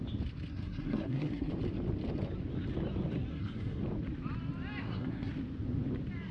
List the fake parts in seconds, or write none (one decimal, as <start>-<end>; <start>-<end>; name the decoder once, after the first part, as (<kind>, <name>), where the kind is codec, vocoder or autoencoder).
0.5-1.5 (codec, SNAC); 3.3-3.8; 4.8-5.3